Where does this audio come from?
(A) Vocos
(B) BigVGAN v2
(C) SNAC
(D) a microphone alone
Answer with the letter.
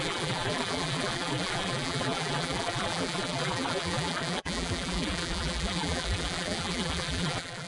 B